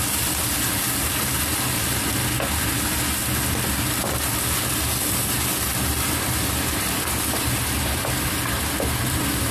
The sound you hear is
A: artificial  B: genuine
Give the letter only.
B